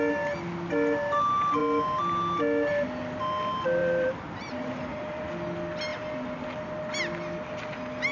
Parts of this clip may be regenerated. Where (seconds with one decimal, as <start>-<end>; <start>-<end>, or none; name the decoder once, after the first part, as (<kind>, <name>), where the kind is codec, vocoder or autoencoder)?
3.8-5.3 (vocoder, BigVGAN v2)